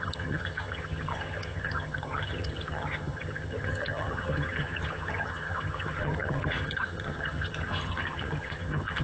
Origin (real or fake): fake